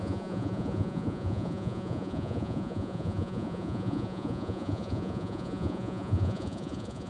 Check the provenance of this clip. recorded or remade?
remade